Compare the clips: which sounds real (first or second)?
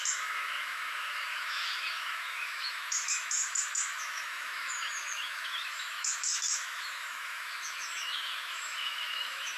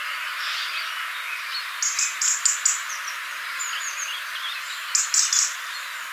second